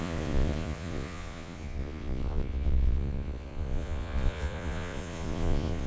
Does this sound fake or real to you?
fake